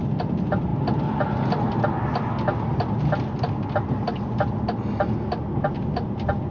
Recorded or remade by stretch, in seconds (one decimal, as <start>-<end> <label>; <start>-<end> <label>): 0.0-6.5 recorded